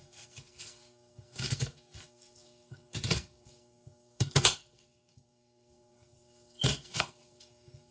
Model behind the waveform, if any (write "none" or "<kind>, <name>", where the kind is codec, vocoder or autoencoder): codec, SNAC